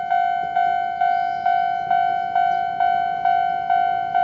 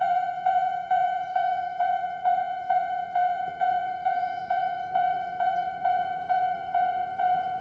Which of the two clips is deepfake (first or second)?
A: second